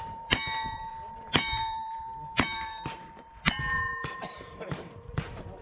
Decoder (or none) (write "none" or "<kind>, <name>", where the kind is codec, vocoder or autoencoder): vocoder, BigVGAN v2